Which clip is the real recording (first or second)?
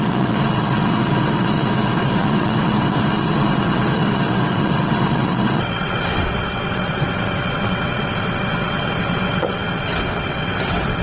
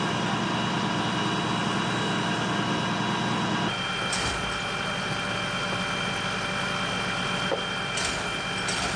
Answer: second